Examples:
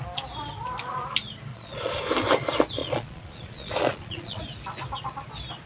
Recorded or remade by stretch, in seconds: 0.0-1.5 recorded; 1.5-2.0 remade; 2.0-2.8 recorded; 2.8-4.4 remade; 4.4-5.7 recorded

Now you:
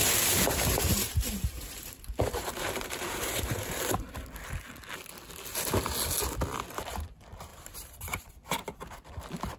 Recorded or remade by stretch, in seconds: 0.0-4.1 remade; 4.1-7.5 recorded; 7.5-8.3 remade; 8.3-9.6 recorded

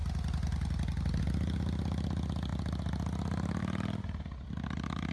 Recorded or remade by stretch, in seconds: 0.0-5.1 recorded

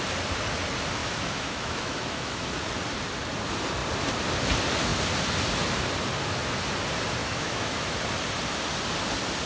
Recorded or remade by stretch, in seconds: 0.0-1.0 recorded; 1.0-2.6 remade; 2.6-7.2 recorded; 7.2-8.0 remade; 8.0-9.5 recorded

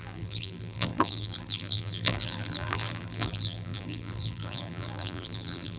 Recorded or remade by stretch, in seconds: 0.0-5.8 remade

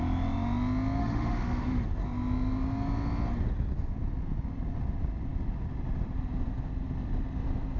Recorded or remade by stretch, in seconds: 0.0-1.0 recorded; 1.0-1.8 remade; 1.8-7.8 recorded